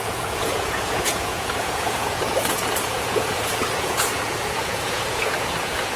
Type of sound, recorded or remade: remade